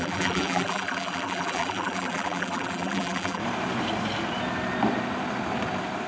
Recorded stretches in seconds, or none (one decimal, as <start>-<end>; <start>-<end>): 3.4-6.1